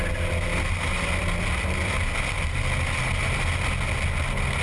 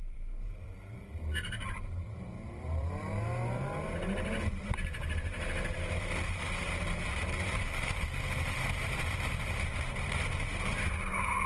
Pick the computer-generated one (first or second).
second